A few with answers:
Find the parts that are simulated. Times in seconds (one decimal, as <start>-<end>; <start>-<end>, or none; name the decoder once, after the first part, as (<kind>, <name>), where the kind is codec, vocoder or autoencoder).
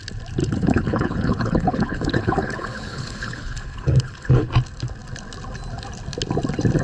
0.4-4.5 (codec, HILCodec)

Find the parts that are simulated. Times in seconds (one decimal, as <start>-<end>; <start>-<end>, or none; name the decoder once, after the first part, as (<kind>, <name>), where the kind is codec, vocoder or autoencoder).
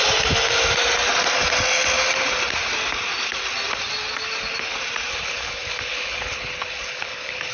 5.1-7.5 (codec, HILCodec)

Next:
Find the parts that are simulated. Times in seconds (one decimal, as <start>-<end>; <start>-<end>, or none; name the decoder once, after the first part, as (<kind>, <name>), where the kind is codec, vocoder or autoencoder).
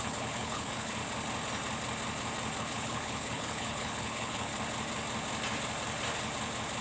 0.0-1.0 (codec, HILCodec); 2.6-4.5